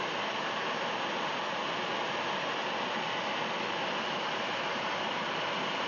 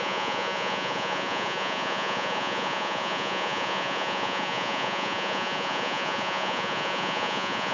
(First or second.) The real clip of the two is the first